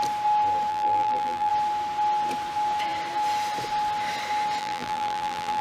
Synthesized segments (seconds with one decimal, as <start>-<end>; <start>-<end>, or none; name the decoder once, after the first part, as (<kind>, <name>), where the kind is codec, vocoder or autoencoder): 0.7-1.5 (vocoder, BigVGAN v2); 4.6-5.6